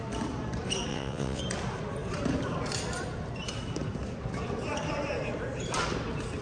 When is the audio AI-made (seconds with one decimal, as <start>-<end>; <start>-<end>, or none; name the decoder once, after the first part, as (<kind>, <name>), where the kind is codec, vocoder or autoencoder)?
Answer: 0.9-1.4 (vocoder, WaveNeXt)